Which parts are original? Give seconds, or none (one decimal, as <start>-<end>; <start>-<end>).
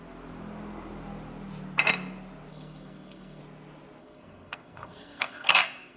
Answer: 0.0-2.5; 3.4-4.0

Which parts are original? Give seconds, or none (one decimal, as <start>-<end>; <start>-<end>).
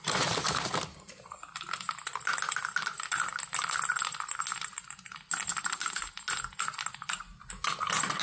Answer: 0.0-8.2